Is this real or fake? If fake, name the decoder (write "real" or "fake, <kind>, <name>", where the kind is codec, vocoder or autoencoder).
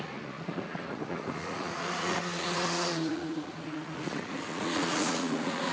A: fake, vocoder, Vocos